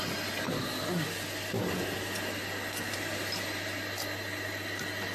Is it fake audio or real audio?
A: real